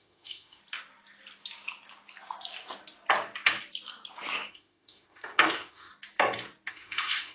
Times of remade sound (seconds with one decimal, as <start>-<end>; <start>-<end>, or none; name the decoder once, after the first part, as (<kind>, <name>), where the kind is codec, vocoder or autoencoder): 0.0-0.6 (autoencoder, DAC-VAE); 4.5-5.9; 6.7-7.3